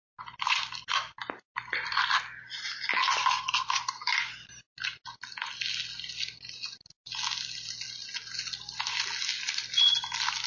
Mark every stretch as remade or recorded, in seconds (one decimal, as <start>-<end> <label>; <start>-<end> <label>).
0.0-10.5 recorded